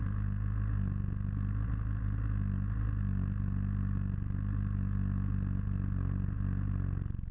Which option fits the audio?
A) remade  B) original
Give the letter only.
B